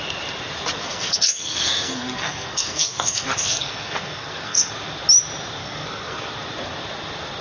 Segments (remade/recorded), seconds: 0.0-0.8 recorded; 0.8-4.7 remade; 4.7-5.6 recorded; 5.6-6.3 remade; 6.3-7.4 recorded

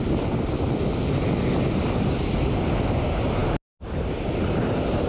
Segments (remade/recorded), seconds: 0.0-5.1 recorded

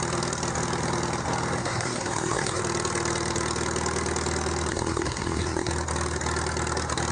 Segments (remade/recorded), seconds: 0.0-1.6 recorded; 1.6-2.6 remade; 2.6-4.7 recorded; 4.7-5.7 remade; 5.7-7.1 recorded